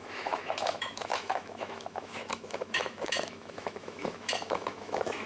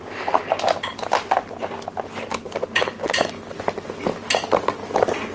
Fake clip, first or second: first